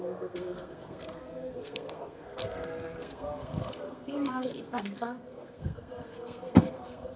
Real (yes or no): no